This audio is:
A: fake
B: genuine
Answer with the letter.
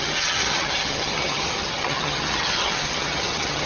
A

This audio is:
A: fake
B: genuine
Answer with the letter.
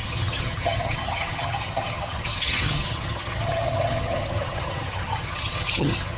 A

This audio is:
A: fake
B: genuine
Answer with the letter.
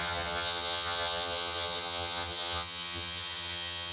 A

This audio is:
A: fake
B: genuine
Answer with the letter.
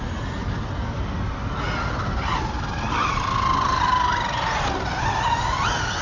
B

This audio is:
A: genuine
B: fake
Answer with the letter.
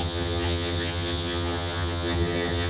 B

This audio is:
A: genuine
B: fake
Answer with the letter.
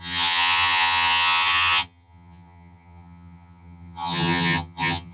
B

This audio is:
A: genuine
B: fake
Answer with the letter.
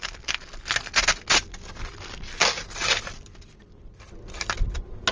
A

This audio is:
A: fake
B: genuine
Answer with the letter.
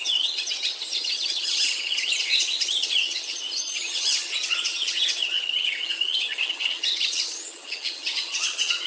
A